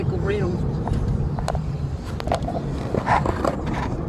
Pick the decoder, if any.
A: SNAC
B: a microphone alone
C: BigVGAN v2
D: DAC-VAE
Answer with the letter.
B